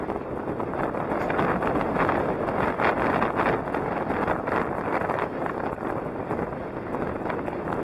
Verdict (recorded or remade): recorded